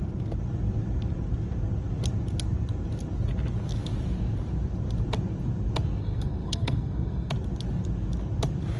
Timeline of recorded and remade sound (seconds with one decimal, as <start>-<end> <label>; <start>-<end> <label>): 0.0-6.0 recorded; 6.0-7.3 remade; 7.3-8.8 recorded

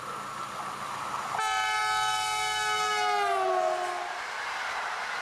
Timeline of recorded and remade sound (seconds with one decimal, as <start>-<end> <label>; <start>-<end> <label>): 0.0-5.2 recorded